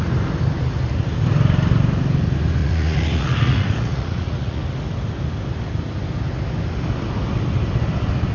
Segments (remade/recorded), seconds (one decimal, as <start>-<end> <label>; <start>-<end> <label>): 0.0-2.6 recorded; 2.6-4.6 remade; 4.6-8.3 recorded